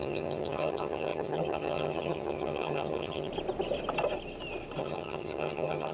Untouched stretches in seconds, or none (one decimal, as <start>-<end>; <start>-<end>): 3.3-4.8